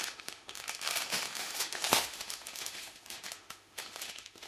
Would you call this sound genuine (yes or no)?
no